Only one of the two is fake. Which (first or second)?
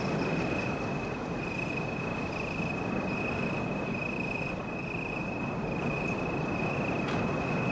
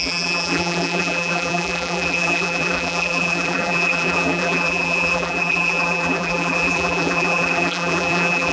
second